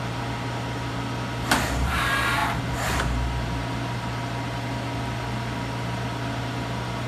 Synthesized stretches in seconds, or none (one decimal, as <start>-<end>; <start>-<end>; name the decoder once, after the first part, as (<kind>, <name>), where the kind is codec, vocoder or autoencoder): none